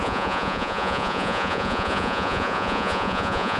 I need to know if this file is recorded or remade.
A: remade